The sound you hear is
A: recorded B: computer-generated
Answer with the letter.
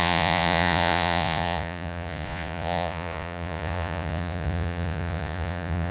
B